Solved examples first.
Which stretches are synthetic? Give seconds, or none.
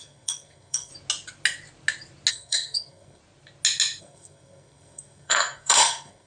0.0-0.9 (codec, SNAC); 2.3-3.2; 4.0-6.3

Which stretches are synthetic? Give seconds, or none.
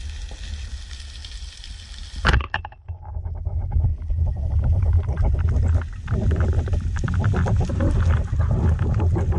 1.2-1.7 (vocoder, BigVGAN v2); 3.9-7.9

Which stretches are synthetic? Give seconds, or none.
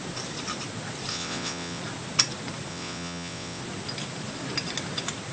1.1-1.8 (vocoder, WaveNeXt); 2.7-3.6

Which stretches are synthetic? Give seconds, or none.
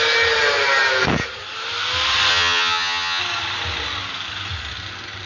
2.3-3.2 (vocoder, HiFi-GAN)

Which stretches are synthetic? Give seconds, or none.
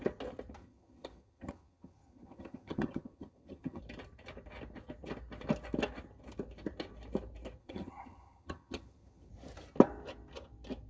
0.6-3.8 (vocoder, HiFi-GAN); 7.6-9.3